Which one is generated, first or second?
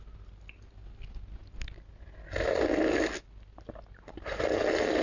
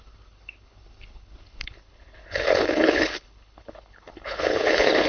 second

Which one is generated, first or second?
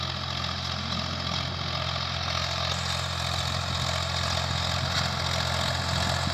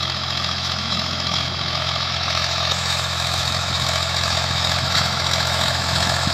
second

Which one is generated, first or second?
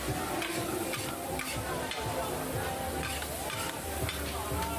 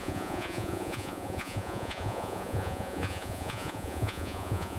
second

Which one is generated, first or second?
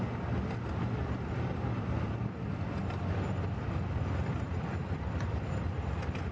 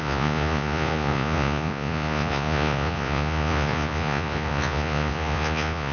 second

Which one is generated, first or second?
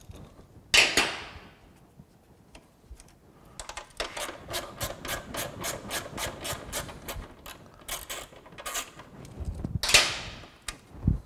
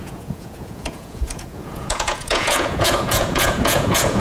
second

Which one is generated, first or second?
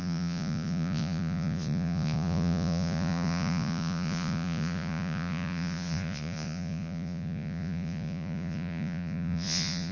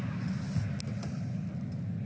first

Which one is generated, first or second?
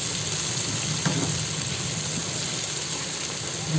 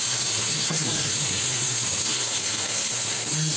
second